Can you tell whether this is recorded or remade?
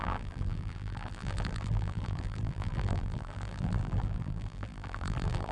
remade